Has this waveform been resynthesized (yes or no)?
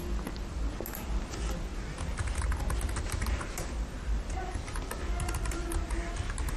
no